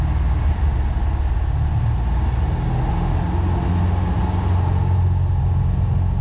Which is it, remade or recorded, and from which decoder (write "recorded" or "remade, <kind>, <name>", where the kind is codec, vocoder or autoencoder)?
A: recorded